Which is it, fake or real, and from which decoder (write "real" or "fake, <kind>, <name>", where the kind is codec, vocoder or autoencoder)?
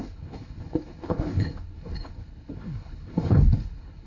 fake, codec, HILCodec